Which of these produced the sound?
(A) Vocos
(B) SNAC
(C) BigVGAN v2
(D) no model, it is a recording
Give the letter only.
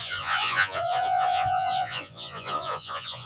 A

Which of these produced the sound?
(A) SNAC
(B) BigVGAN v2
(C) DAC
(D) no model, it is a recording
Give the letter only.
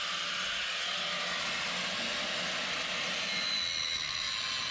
D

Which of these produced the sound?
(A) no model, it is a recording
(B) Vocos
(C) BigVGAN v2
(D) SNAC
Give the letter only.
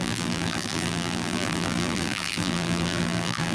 C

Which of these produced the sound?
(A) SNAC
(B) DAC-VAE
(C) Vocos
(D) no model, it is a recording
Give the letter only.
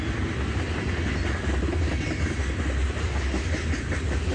D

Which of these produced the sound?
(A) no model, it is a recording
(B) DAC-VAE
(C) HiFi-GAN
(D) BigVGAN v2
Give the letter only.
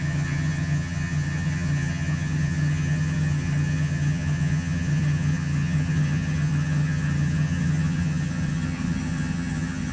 C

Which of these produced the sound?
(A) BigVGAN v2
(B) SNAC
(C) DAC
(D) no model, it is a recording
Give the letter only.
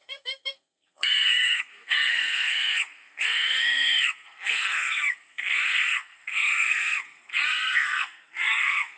B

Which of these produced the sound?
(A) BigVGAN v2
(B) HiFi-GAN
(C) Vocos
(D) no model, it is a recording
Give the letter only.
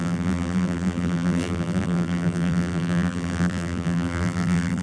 A